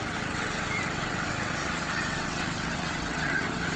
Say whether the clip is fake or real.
fake